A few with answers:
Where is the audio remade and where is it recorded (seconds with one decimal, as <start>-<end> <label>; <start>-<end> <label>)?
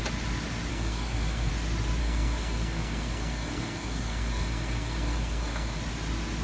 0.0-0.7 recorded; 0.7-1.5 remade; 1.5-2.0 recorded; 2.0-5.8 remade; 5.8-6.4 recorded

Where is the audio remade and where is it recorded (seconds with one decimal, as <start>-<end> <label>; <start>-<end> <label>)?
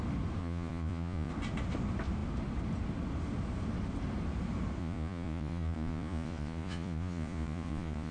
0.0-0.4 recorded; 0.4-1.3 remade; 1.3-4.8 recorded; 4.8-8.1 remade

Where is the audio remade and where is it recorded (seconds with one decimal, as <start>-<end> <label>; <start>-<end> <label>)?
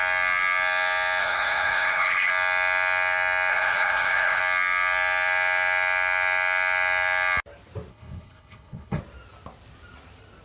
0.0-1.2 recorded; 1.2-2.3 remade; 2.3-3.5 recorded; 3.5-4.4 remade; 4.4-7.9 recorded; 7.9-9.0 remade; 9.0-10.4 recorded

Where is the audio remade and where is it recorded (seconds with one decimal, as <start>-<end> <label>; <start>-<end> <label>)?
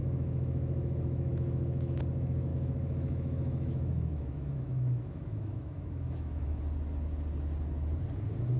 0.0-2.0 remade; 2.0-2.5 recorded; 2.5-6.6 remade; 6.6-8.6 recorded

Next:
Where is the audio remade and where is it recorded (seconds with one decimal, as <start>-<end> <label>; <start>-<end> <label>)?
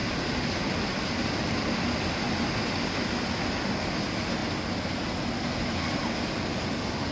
0.0-7.1 recorded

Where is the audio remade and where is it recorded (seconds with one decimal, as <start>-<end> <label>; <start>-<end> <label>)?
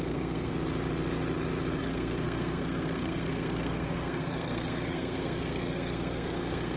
0.0-0.5 remade; 0.5-1.8 recorded; 1.8-6.8 remade